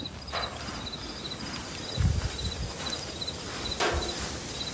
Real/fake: real